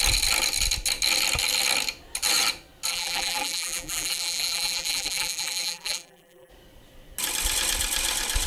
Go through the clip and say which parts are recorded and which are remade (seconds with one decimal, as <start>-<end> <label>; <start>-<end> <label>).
0.0-2.9 recorded; 2.9-6.5 remade; 6.5-8.5 recorded